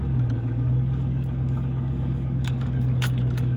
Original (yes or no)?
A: no